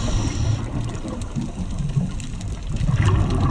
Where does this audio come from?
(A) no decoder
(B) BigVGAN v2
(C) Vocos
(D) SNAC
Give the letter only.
A